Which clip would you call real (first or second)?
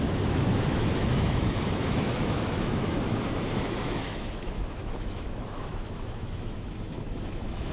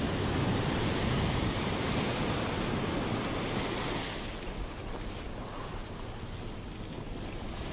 second